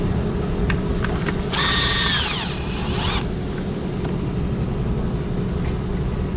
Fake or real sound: real